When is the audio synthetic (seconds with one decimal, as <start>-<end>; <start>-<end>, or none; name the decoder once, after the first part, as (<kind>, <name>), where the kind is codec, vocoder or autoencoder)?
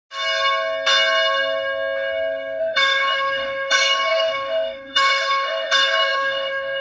2.6-6.8 (autoencoder, DAC-VAE)